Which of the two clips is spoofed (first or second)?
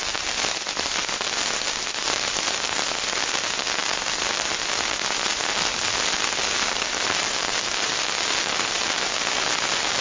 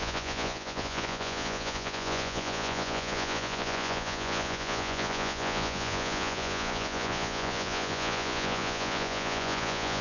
second